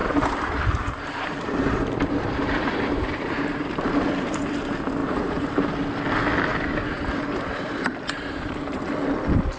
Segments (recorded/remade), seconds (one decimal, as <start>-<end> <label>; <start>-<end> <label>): 0.0-3.9 remade; 3.9-5.0 recorded; 5.0-5.7 remade; 5.7-6.5 recorded; 6.5-8.8 remade; 8.8-9.6 recorded